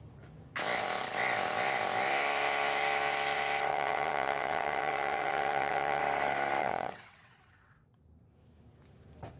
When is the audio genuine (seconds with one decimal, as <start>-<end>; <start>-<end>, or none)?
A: 0.0-3.7; 6.0-6.6; 8.0-9.4